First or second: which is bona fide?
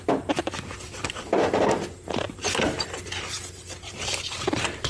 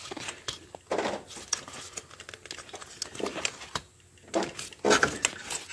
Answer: second